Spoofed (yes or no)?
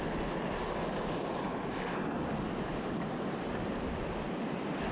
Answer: no